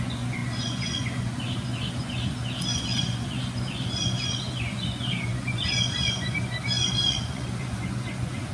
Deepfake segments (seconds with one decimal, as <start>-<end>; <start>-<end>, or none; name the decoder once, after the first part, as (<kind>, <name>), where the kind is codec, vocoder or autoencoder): 0.0-8.5 (vocoder, Vocos)